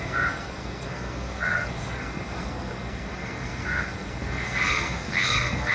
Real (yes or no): no